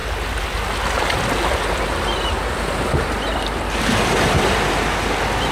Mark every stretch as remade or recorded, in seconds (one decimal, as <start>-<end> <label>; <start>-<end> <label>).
0.0-5.5 recorded